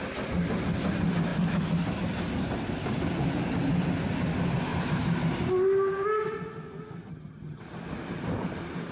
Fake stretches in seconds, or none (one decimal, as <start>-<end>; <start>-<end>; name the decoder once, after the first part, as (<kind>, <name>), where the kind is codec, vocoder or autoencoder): 7.1-7.6 (vocoder, HiFi-GAN)